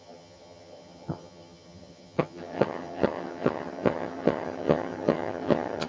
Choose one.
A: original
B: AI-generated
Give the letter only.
B